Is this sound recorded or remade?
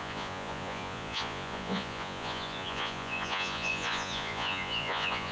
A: remade